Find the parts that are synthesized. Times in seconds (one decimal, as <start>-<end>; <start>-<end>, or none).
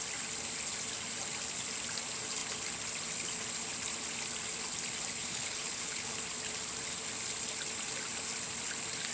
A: 5.3-6.2